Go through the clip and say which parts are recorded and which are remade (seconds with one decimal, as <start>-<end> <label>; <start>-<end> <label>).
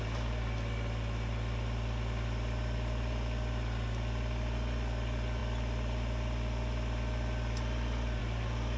0.0-8.8 recorded